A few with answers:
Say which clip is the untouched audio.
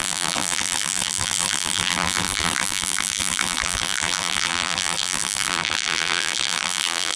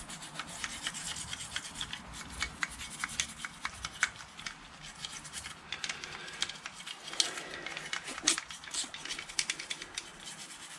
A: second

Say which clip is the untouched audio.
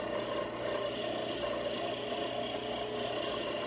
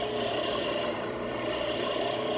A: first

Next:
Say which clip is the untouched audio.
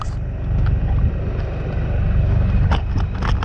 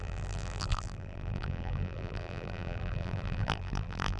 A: first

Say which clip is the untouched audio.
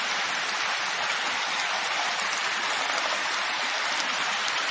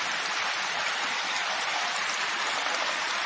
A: first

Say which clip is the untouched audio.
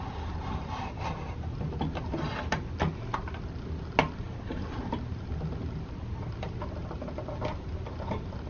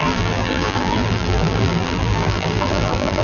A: first